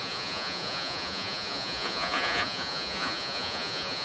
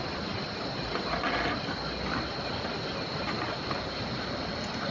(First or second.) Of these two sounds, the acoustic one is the second